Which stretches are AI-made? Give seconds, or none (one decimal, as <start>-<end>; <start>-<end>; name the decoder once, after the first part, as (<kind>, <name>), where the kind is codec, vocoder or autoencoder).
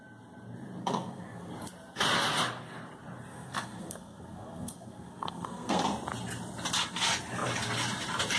0.8-1.5 (codec, SNAC); 3.3-5.8